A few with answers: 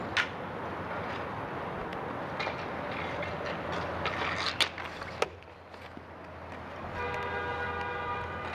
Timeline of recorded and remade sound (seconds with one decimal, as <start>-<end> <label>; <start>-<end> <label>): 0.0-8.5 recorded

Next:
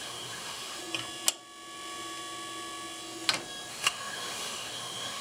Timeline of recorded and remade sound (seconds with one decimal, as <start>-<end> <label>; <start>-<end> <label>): 0.0-0.8 remade; 0.8-3.7 recorded; 3.7-5.2 remade

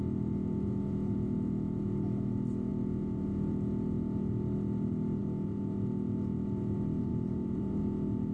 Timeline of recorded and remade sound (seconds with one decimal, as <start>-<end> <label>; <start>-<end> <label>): 0.0-7.1 recorded; 7.1-7.8 remade; 7.8-8.3 recorded

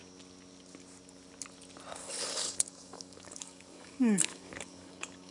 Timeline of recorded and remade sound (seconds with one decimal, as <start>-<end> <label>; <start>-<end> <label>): 0.0-2.0 recorded; 2.0-5.3 remade

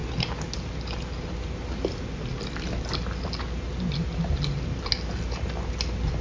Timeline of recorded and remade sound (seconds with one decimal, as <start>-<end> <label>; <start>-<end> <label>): 0.0-6.2 recorded

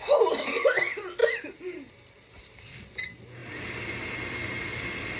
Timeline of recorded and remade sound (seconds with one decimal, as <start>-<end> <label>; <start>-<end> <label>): 0.0-1.2 recorded; 1.2-2.9 remade; 2.9-5.2 recorded